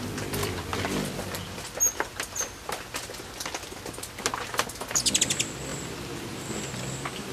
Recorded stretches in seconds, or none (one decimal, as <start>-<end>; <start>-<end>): 0.0-7.3